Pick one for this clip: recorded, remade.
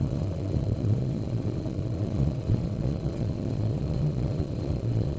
remade